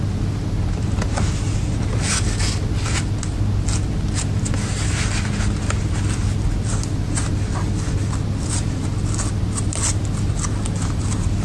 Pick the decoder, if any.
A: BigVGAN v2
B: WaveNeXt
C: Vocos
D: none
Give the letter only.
D